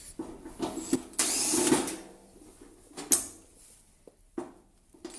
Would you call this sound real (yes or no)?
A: yes